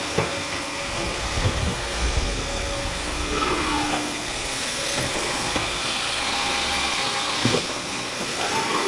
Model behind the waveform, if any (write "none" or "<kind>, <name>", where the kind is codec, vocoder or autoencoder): codec, SNAC